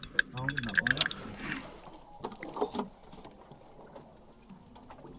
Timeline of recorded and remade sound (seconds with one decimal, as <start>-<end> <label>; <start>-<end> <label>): 0.0-5.2 recorded